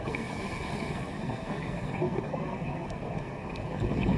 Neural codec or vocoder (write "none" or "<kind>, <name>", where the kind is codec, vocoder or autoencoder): codec, SNAC